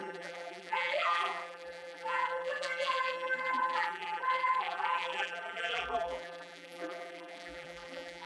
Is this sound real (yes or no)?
no